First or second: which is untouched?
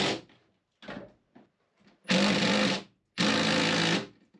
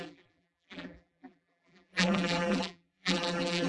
first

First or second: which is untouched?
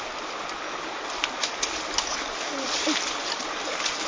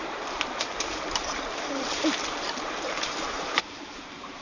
first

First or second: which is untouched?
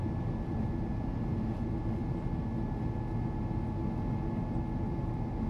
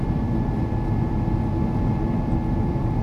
first